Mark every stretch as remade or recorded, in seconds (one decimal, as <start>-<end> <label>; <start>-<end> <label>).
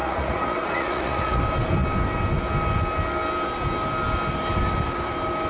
0.0-1.4 remade; 1.4-5.5 recorded